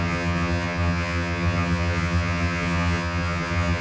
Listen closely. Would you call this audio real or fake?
fake